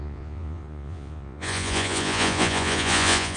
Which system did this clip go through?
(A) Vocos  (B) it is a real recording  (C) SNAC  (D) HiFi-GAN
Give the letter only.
A